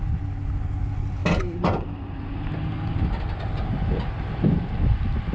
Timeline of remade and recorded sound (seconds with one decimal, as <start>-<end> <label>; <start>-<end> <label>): 0.0-5.3 recorded